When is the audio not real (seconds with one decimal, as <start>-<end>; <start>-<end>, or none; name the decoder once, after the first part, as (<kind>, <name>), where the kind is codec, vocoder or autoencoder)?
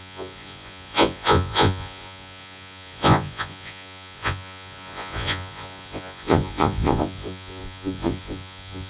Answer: 0.0-8.9 (vocoder, Vocos)